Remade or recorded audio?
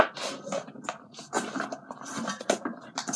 recorded